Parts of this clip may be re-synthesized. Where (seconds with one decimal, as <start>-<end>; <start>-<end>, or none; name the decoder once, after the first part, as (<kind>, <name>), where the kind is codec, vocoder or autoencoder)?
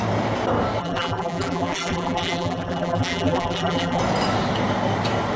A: 0.8-4.0 (vocoder, BigVGAN v2)